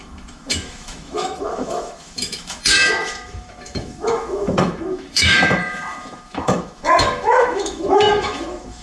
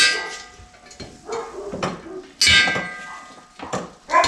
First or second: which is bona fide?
second